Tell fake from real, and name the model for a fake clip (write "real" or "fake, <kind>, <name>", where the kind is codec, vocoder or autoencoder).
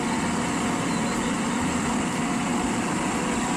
real